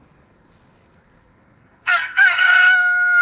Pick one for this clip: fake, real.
fake